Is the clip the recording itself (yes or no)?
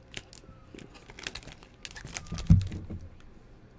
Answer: yes